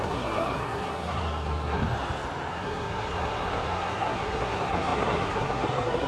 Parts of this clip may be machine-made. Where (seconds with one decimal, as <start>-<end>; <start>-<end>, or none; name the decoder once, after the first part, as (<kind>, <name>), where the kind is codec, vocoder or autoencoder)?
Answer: 0.0-1.8 (codec, SNAC); 2.5-6.1